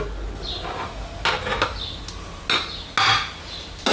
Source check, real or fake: real